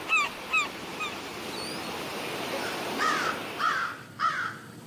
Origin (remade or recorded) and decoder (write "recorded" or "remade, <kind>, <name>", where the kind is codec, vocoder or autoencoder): recorded